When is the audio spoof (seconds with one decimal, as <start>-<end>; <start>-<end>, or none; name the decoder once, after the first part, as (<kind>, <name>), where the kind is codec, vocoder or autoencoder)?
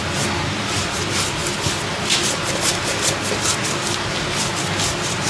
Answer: none